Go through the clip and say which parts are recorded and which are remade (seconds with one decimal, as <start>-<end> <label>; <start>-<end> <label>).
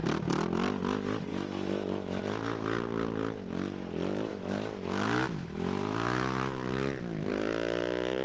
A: 0.0-1.3 recorded; 1.3-2.2 remade; 2.2-4.3 recorded; 4.3-7.3 remade; 7.3-8.2 recorded